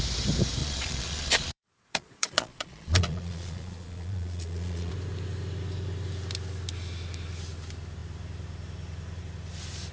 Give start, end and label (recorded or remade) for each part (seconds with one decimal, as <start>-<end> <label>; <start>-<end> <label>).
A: 0.0-0.6 recorded; 0.6-4.9 remade; 4.9-9.9 recorded